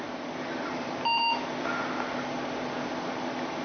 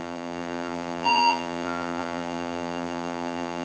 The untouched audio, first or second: first